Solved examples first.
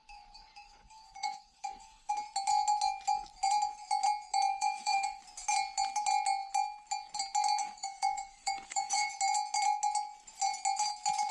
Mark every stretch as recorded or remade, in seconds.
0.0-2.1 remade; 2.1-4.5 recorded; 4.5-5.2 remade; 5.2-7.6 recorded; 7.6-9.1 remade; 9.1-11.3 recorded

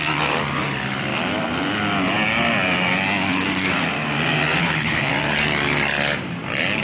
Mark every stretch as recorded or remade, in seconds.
0.0-4.6 recorded; 4.6-5.1 remade; 5.1-6.8 recorded

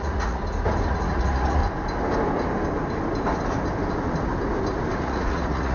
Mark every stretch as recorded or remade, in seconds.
0.0-0.4 remade; 0.4-0.9 recorded; 0.9-1.6 remade; 1.6-5.0 recorded; 5.0-5.7 remade

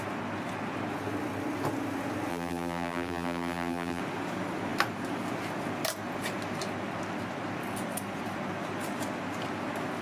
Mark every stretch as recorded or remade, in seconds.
0.0-2.3 recorded; 2.3-4.0 remade; 4.0-10.0 recorded

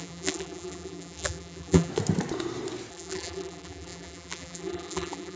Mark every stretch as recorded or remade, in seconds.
0.0-1.9 remade; 1.9-2.9 recorded; 2.9-5.4 remade

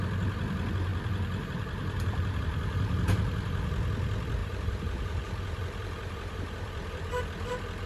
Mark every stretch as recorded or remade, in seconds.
0.0-0.9 recorded; 0.9-2.4 remade; 2.4-4.4 recorded; 4.4-7.2 remade; 7.2-7.9 recorded